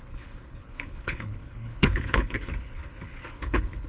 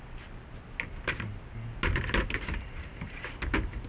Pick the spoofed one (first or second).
first